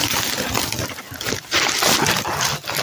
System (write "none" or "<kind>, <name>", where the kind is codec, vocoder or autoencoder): none